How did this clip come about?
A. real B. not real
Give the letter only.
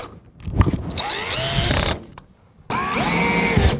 A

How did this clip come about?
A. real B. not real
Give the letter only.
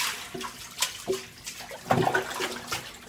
A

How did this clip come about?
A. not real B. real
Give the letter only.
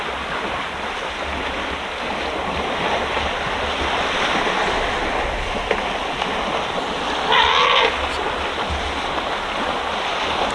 B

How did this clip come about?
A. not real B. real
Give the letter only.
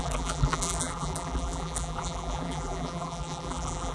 A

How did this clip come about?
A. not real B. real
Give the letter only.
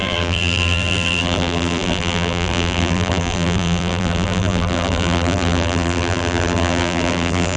A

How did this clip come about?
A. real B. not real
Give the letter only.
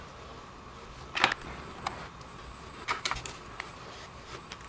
A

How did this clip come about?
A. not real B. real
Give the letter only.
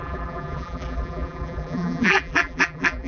A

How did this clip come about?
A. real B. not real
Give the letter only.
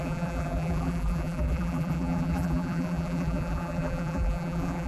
B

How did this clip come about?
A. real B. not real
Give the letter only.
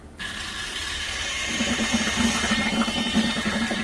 B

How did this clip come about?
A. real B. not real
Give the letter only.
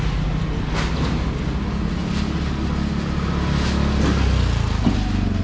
A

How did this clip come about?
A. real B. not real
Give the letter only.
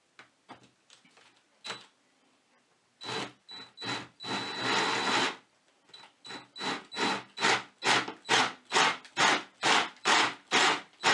A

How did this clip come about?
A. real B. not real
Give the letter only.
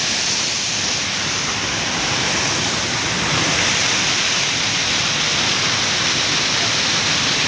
B